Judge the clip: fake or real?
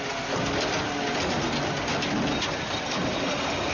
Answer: real